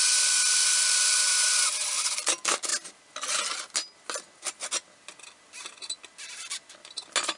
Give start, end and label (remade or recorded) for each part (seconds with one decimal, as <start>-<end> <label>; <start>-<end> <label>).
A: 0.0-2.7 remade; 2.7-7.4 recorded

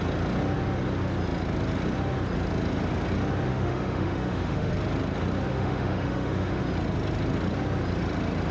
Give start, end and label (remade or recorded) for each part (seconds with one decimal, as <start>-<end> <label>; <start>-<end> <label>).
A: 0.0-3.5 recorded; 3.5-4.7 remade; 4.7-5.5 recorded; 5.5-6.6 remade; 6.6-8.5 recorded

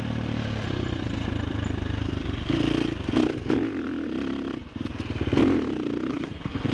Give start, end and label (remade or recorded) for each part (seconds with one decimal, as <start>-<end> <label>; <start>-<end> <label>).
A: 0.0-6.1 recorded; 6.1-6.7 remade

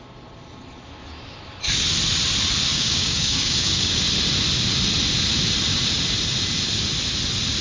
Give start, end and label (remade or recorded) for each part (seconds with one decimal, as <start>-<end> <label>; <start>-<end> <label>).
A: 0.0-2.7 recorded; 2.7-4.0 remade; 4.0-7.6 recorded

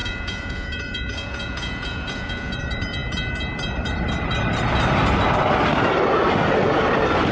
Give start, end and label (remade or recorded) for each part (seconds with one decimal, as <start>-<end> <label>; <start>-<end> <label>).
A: 0.0-2.6 remade; 2.6-7.3 recorded

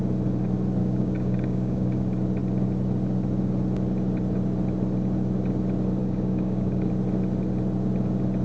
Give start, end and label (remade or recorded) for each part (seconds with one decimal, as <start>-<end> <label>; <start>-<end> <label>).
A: 0.0-0.8 recorded; 0.8-2.0 remade; 2.0-6.0 recorded; 6.0-6.9 remade; 6.9-8.4 recorded